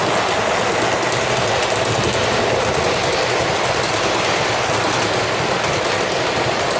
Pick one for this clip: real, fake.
real